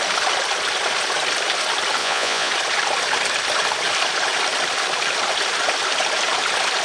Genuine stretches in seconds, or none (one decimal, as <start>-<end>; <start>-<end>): 0.0-2.0; 2.5-6.8